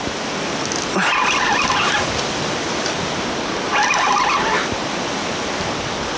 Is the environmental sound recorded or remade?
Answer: recorded